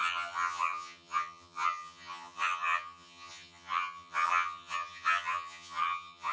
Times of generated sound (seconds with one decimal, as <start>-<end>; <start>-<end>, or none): 0.0-6.3